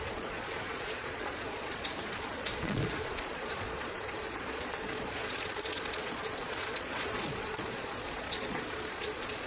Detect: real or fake fake